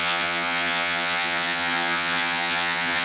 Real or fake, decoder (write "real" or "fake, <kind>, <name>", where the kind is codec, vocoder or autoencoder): fake, vocoder, HiFi-GAN